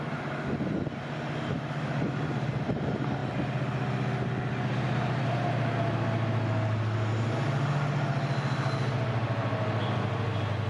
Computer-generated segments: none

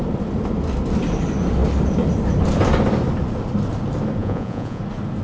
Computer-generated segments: 4.2-4.8 (vocoder, Vocos)

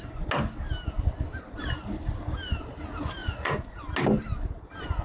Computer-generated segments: 3.2-3.8 (vocoder, Vocos)